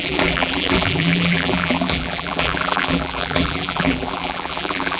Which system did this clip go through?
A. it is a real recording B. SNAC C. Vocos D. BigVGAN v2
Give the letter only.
D